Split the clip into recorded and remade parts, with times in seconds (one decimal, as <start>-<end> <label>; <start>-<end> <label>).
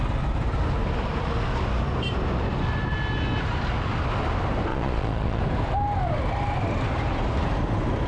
0.0-4.7 recorded; 4.7-5.4 remade; 5.4-8.1 recorded